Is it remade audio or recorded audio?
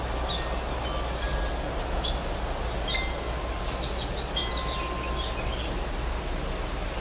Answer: recorded